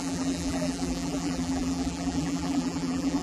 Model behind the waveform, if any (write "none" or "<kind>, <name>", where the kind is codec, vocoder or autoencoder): vocoder, BigVGAN v2